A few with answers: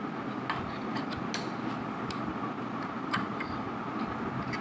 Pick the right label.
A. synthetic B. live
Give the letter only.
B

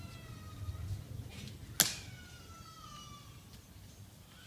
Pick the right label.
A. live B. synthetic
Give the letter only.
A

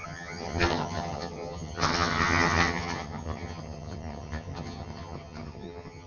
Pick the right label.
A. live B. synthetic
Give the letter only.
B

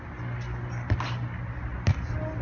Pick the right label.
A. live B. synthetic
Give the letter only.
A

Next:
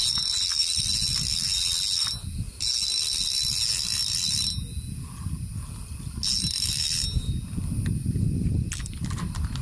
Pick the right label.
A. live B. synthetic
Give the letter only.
A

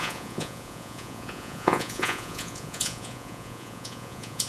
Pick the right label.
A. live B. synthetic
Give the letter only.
B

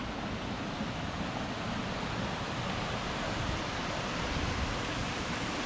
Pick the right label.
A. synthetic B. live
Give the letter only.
B